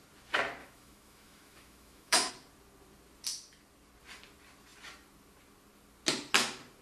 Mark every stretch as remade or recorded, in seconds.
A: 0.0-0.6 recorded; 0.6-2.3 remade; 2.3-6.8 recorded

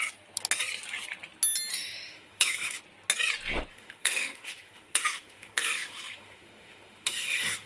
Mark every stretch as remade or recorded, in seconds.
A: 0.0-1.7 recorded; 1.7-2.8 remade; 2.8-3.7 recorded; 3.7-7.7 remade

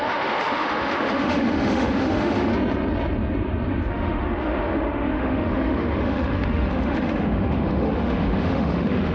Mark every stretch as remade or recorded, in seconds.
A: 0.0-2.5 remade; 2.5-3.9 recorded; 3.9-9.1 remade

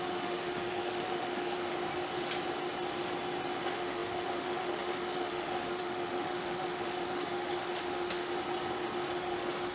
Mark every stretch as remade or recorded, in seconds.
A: 0.0-1.7 remade; 1.7-3.6 recorded; 3.6-8.3 remade; 8.3-9.1 recorded; 9.1-9.7 remade